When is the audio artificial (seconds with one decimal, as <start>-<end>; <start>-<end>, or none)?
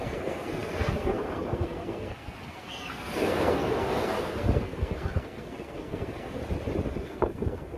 0.0-6.4; 6.9-7.8